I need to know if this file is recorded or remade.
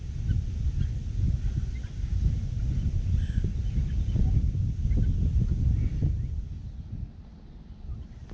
recorded